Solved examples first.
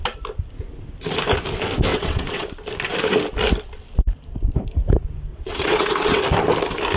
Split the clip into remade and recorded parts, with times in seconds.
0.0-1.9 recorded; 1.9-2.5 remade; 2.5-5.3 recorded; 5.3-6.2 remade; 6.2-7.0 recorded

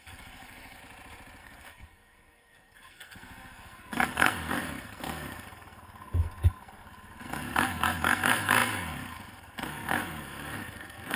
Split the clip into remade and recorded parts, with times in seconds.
0.0-0.8 remade; 0.8-1.4 recorded; 1.4-11.2 remade

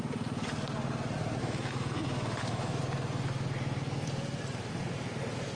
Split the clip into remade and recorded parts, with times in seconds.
0.0-1.4 recorded; 1.4-2.8 remade; 2.8-5.6 recorded

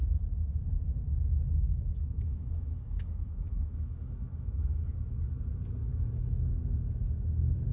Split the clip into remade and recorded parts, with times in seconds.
0.0-1.7 recorded; 1.7-5.2 remade; 5.2-5.9 recorded; 5.9-6.5 remade; 6.5-7.7 recorded